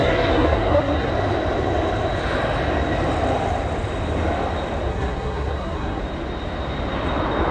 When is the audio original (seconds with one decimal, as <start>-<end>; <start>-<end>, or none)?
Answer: 1.1-4.9; 6.0-7.5